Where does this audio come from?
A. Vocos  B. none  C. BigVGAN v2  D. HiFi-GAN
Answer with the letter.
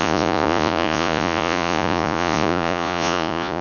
A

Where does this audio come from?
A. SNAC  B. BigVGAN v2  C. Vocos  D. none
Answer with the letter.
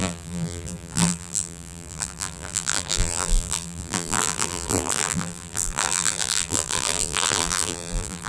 B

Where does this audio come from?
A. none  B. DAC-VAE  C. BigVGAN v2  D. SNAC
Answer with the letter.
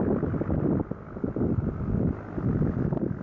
A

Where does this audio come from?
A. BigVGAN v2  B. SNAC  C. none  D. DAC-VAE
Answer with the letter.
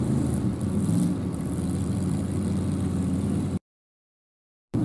A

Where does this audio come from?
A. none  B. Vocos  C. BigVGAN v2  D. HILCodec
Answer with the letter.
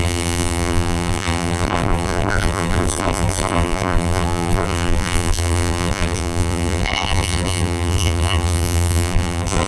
C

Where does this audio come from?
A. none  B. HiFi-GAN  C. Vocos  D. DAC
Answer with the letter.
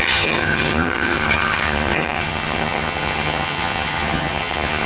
B